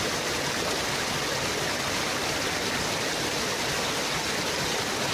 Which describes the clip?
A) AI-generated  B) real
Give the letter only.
B